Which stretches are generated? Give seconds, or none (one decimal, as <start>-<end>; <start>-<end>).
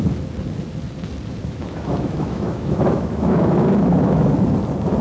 1.4-4.3